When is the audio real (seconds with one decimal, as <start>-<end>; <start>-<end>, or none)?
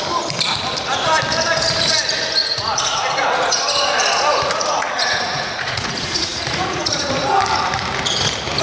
0.0-2.4; 3.6-4.3; 7.1-8.6